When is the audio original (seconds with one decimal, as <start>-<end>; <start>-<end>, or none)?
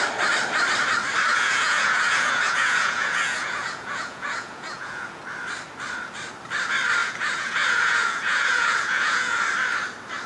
0.0-1.3; 5.2-7.0; 9.4-10.3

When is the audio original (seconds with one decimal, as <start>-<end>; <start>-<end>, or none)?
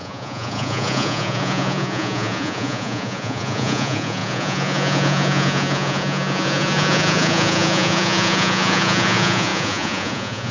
none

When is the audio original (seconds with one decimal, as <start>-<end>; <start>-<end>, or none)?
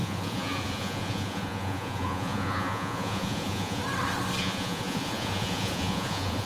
3.8-4.4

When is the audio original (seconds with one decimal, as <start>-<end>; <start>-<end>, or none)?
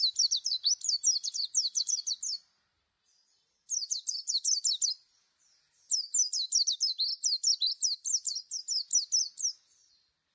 0.0-10.3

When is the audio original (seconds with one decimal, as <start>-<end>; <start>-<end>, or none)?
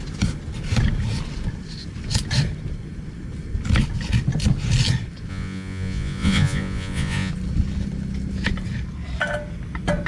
0.0-5.3; 7.3-10.1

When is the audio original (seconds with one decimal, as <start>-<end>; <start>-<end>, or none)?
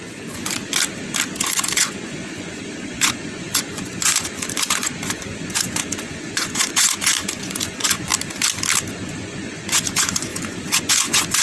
0.6-1.4; 8.1-8.9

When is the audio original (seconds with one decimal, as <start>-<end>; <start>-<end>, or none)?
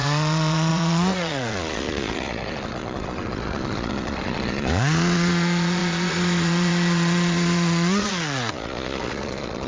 none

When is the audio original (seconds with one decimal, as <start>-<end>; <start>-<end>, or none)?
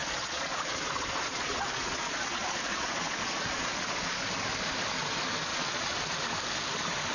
4.2-5.5; 6.0-7.1